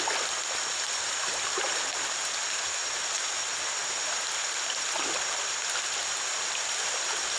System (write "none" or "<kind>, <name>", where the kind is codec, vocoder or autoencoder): none